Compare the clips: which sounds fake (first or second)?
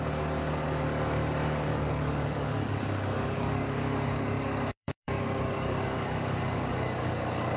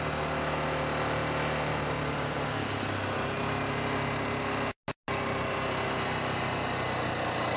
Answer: first